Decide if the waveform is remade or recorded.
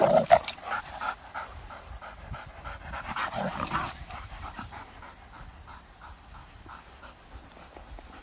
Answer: recorded